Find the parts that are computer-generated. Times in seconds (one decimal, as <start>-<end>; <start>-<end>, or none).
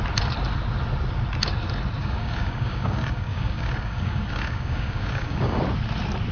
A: 2.0-5.6